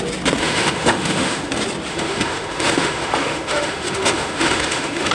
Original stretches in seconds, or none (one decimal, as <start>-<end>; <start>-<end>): 0.0-0.4; 1.5-1.9